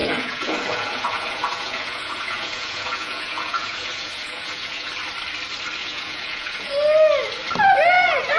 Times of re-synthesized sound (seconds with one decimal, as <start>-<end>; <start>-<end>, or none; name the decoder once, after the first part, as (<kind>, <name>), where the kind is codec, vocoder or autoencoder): 0.0-4.9 (vocoder, Vocos); 5.8-6.7